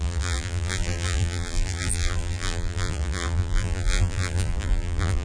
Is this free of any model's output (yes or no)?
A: no